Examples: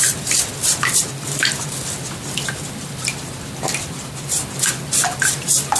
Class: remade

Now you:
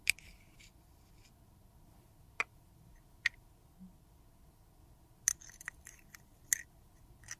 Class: recorded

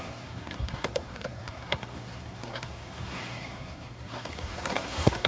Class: remade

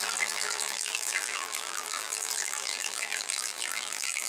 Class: remade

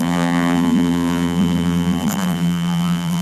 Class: remade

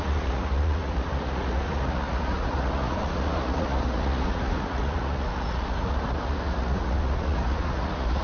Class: remade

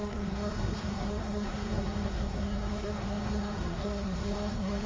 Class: remade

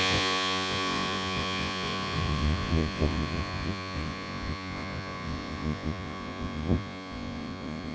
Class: remade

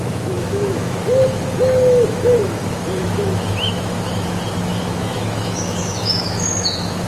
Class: remade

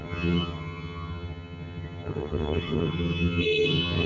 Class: remade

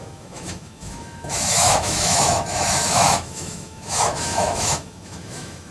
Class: remade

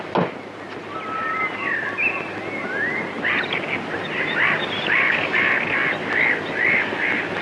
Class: recorded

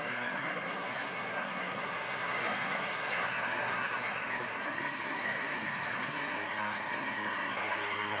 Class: remade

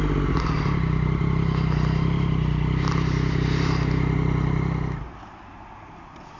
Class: recorded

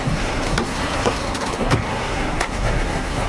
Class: remade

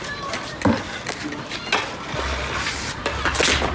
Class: recorded